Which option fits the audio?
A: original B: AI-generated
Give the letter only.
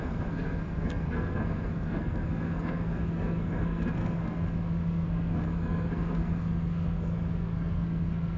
B